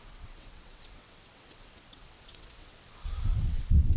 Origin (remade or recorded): remade